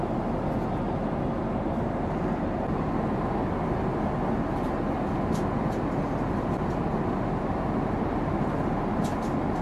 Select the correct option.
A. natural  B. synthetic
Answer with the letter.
A